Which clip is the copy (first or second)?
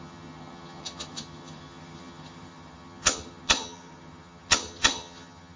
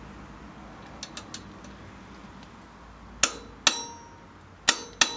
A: first